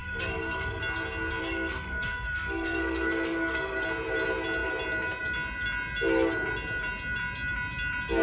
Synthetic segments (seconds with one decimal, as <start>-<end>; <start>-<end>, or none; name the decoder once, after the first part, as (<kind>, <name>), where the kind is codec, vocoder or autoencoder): 0.0-0.8 (codec, SNAC); 1.4-3.8